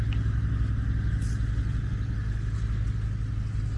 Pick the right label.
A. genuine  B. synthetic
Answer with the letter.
A